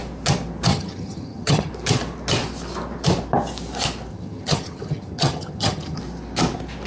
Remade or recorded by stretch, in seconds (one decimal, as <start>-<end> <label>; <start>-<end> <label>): 0.0-0.7 recorded; 0.7-1.7 remade; 1.7-4.1 recorded; 4.1-6.0 remade; 6.0-6.9 recorded